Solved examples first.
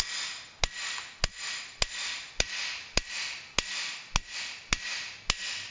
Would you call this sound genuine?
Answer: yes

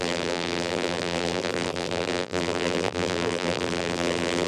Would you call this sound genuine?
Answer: no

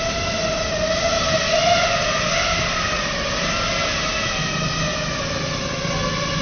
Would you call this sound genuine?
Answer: yes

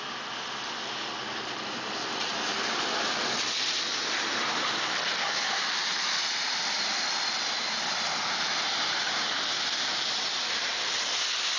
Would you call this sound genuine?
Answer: yes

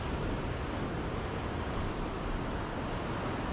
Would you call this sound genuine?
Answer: yes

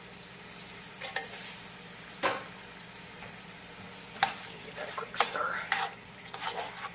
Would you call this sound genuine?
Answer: yes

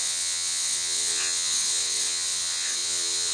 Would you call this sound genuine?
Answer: no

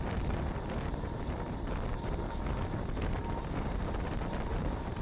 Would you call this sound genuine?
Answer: yes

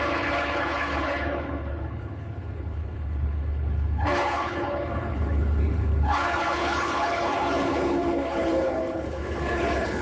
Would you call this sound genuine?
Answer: no